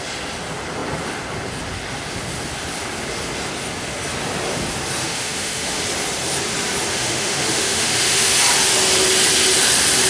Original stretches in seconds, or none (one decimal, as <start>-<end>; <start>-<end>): 0.0-5.0; 5.8-6.9; 8.3-10.1